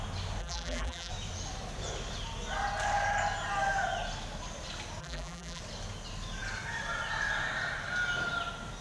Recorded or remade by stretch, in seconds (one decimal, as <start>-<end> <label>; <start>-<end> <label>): 0.0-0.4 recorded; 0.4-1.1 remade; 1.1-5.0 recorded; 5.0-5.6 remade; 5.6-8.8 recorded

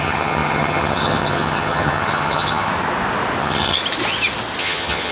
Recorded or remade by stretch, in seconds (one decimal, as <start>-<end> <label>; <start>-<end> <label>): 0.0-2.7 remade; 2.7-3.4 recorded; 3.4-3.8 remade; 3.8-4.6 recorded; 4.6-5.1 remade

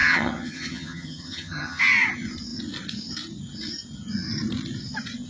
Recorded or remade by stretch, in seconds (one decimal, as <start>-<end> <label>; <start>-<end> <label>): 0.0-1.8 remade; 1.8-5.3 recorded